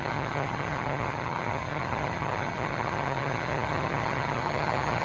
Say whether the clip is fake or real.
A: fake